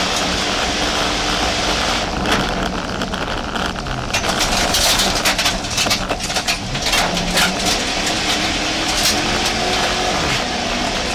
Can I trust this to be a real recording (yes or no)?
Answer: yes